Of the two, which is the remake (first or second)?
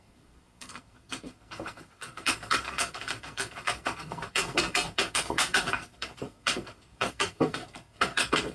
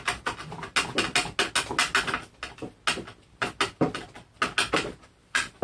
first